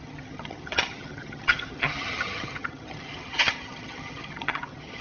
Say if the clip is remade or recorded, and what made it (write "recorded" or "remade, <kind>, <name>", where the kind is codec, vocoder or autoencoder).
remade, vocoder, HiFi-GAN